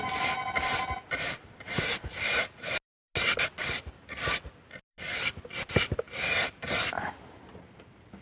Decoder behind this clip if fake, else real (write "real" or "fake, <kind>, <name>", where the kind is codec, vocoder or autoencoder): real